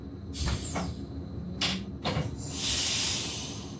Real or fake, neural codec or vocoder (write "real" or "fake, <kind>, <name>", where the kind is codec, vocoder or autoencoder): real